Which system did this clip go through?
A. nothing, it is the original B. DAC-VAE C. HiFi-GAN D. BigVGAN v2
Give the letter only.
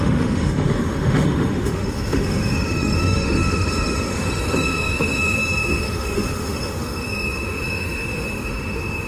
B